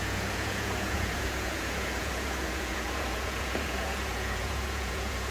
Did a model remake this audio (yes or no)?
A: yes